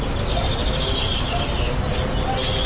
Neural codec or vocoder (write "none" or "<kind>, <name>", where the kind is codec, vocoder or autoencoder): none